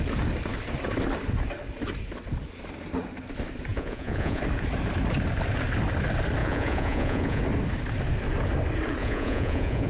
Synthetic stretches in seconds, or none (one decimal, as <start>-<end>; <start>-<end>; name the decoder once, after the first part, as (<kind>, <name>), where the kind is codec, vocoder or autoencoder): 3.7-4.4 (vocoder, Vocos); 6.4-7.4; 9.0-9.9